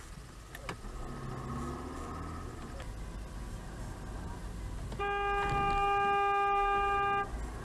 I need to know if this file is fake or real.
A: real